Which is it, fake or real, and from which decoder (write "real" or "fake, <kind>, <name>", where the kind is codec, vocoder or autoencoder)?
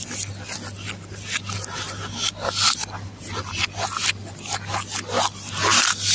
real